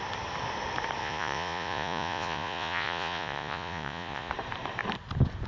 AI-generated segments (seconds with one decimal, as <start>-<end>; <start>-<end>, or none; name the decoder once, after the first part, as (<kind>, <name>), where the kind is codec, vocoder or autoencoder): 1.0-4.3 (vocoder, Vocos)